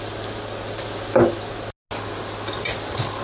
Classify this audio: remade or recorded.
recorded